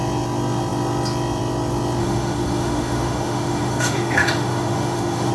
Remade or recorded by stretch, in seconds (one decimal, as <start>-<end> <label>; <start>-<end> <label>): 0.0-2.0 recorded; 2.0-5.3 remade